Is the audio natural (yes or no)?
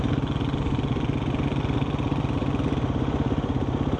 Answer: yes